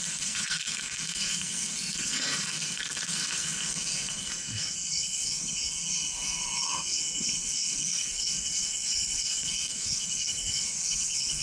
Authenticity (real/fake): fake